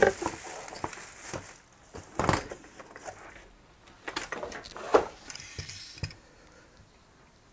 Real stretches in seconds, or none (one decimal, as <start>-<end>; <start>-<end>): 0.0-4.9; 6.2-7.5